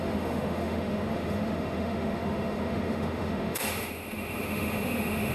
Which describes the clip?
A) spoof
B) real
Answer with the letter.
A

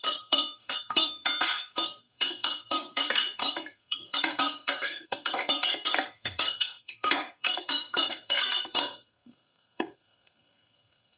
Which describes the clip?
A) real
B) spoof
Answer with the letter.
B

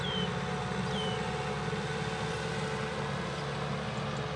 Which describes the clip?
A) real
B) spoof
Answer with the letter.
A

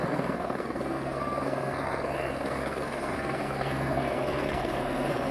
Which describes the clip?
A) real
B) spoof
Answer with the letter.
B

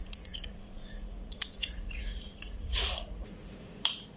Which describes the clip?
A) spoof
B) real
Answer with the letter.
A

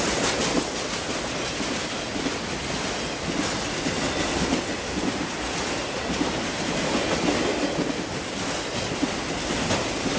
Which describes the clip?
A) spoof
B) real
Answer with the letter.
B